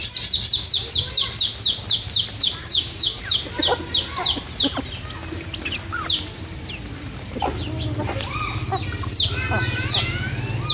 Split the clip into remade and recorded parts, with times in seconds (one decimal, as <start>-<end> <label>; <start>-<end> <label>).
0.0-2.6 recorded; 2.6-3.2 remade; 3.2-10.7 recorded